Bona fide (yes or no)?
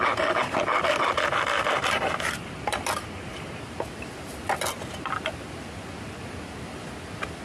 yes